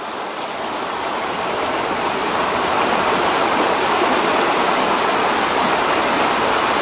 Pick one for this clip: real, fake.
real